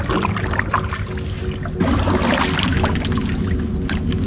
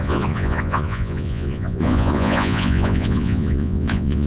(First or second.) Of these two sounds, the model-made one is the second